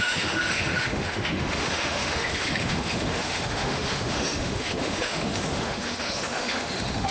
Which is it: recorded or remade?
remade